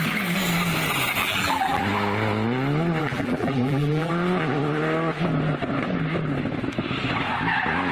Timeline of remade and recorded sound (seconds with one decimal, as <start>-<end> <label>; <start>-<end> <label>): 0.0-1.2 recorded; 1.2-1.8 remade; 1.8-3.0 recorded; 3.0-4.1 remade; 4.1-7.9 recorded